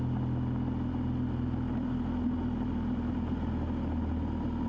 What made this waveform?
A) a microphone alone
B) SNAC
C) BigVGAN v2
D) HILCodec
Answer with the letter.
A